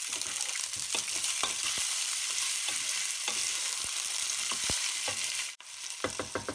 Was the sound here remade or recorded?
recorded